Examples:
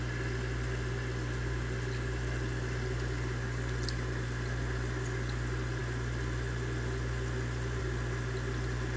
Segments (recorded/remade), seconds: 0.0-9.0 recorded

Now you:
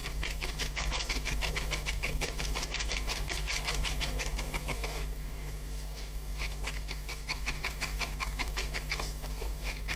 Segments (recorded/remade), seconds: 0.0-10.0 remade

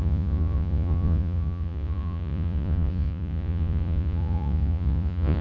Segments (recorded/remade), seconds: 0.0-5.4 remade

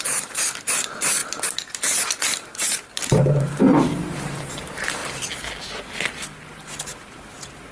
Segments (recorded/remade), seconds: 0.0-1.2 remade; 1.2-2.2 recorded; 2.2-5.0 remade; 5.0-6.5 recorded; 6.5-7.7 remade

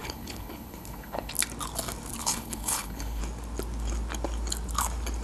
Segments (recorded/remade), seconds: 0.0-1.3 remade; 1.3-2.2 recorded; 2.2-3.2 remade; 3.2-5.2 recorded

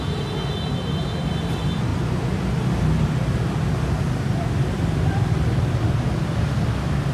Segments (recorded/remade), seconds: 0.0-7.1 recorded